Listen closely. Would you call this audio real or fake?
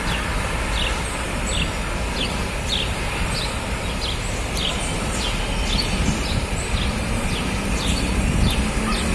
real